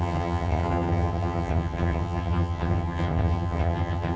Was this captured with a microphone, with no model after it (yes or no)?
no